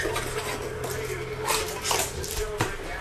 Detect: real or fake real